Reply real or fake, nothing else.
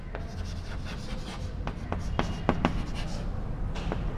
real